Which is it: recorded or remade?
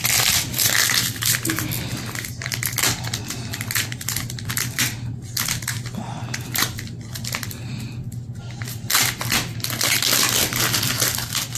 recorded